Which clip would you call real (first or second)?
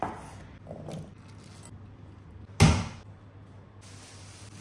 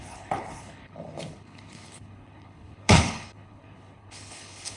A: first